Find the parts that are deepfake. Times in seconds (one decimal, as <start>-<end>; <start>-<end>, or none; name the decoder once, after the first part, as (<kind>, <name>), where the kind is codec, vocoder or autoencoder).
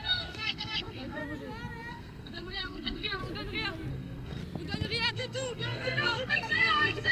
0.0-1.2 (codec, SNAC); 1.9-3.2; 3.9-4.4; 5.1-7.1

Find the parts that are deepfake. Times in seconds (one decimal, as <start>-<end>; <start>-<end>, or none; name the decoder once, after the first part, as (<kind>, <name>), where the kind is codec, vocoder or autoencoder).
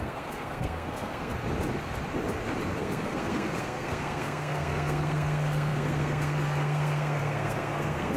0.0-1.3 (codec, SNAC); 2.8-8.2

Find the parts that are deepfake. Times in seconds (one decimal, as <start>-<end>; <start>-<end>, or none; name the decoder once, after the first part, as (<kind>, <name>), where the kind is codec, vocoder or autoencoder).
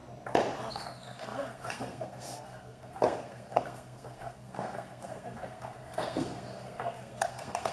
0.7-7.7 (codec, SNAC)